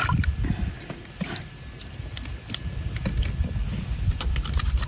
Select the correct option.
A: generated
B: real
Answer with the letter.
B